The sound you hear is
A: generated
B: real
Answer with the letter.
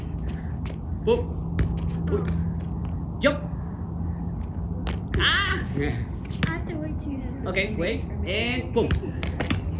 B